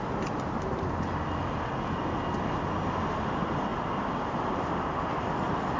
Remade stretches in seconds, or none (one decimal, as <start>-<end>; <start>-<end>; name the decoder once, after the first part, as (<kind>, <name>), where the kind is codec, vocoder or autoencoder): none

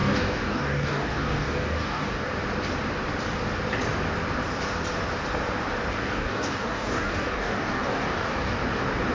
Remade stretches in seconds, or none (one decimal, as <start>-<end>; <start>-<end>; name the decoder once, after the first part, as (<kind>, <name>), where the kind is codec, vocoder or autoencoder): 0.0-2.3 (codec, DAC); 5.9-8.6

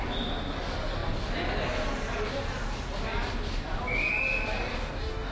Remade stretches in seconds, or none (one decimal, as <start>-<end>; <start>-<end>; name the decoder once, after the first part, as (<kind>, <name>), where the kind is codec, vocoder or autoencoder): 4.7-5.3 (codec, DAC)

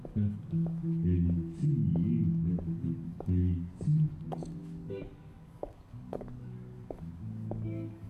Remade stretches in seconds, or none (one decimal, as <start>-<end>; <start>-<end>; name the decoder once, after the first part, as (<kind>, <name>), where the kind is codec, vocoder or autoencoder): 0.0-1.8 (codec, DAC); 2.5-3.9; 4.6-8.1

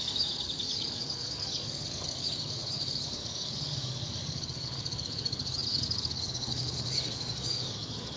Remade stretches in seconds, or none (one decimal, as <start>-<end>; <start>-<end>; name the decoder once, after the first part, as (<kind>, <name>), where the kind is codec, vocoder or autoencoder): 0.0-8.2 (codec, DAC)

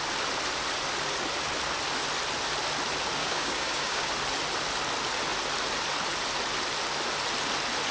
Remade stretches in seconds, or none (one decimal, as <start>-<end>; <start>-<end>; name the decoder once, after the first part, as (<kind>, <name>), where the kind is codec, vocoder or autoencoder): 3.2-4.1 (codec, DAC)